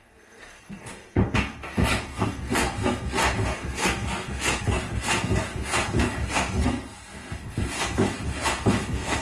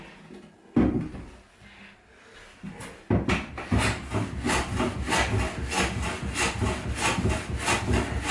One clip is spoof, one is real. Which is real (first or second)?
second